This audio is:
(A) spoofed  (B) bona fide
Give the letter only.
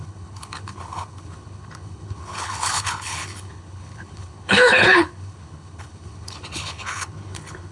A